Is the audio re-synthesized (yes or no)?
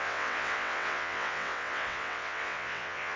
yes